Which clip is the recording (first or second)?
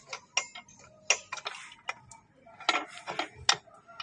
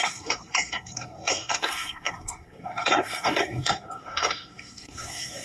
first